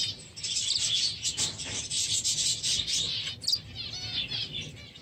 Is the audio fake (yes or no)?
no